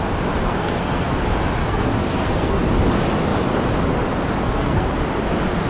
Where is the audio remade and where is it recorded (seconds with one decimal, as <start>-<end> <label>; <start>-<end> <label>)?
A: 0.0-0.4 recorded; 0.4-1.2 remade; 1.2-1.6 recorded; 1.6-2.6 remade; 2.6-4.4 recorded; 4.4-5.0 remade; 5.0-5.7 recorded